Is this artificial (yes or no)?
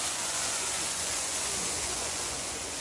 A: yes